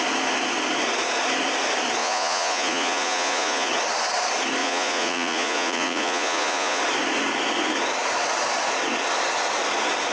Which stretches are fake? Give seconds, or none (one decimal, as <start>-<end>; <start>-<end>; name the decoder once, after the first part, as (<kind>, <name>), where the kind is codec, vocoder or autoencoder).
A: 2.0-3.7 (vocoder, Vocos); 4.6-6.8